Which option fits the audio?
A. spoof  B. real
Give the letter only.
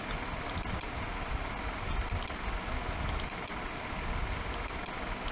B